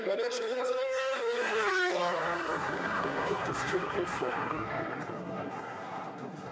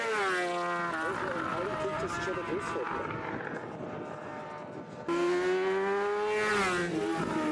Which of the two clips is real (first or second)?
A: second